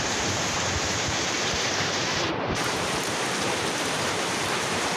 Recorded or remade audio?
remade